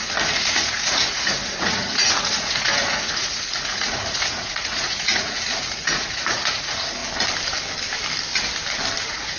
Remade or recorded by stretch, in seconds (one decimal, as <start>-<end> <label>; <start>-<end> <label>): 0.0-7.0 remade; 7.0-9.0 recorded; 9.0-9.4 remade